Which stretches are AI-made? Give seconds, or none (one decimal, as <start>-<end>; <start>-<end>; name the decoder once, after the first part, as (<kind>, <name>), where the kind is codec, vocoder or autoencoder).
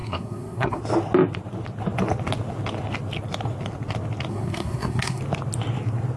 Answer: 0.0-0.8 (codec, SNAC); 4.3-5.2